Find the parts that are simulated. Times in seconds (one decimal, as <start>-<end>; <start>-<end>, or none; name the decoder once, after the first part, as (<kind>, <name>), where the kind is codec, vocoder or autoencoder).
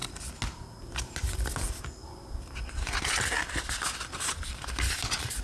none